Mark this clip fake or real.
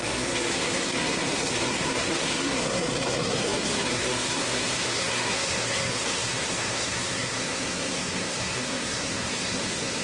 fake